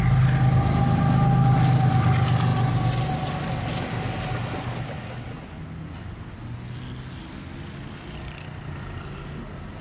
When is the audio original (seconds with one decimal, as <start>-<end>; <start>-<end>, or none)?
0.0-9.8